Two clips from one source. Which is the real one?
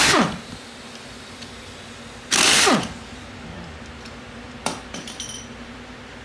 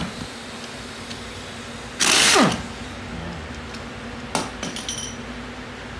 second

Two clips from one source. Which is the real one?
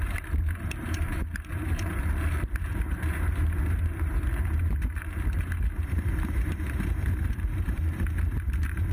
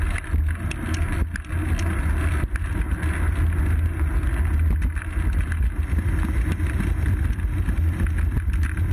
second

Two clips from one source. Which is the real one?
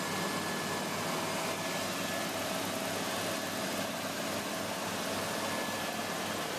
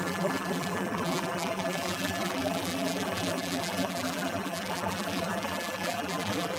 first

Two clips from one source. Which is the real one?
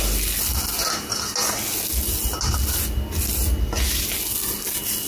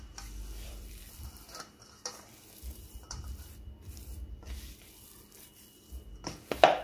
first